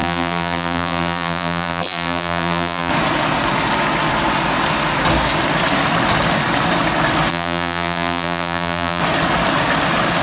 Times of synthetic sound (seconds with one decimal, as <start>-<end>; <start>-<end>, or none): 0.0-2.9; 7.3-9.0